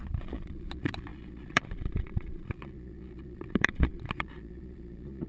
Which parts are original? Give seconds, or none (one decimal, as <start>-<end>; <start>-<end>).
none